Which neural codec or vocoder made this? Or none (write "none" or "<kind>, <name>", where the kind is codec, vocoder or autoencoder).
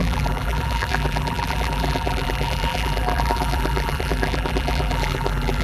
vocoder, BigVGAN v2